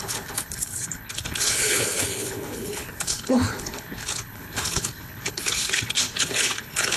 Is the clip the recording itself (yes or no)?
no